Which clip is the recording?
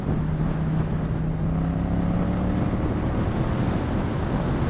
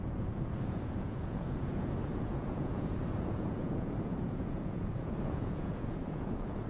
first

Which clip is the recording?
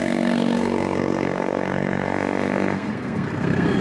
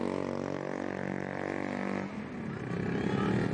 second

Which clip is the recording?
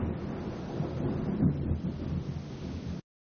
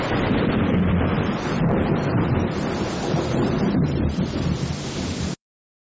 first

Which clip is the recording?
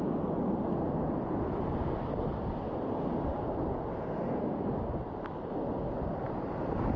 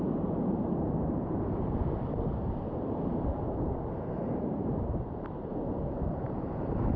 first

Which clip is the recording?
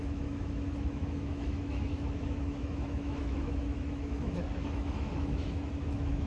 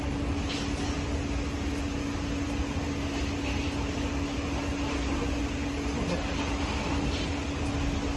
second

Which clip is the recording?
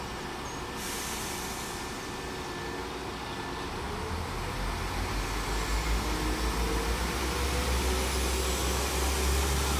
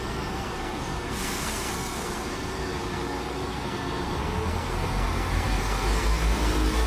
first